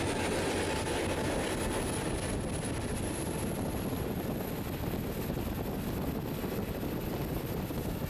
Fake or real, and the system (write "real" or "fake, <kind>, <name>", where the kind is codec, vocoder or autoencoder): real